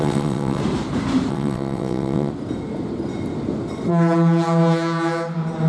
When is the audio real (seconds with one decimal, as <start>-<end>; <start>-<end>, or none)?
0.6-1.3; 2.3-5.7